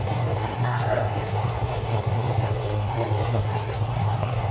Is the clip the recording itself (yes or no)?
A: no